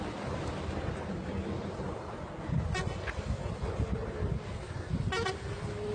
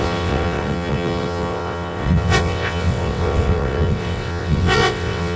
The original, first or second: first